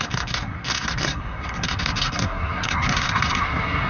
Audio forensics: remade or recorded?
remade